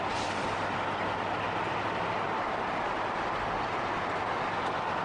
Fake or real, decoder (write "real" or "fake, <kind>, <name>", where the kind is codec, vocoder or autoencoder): real